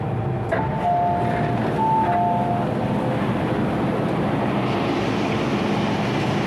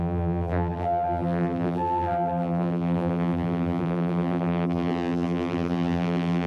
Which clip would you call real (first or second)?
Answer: first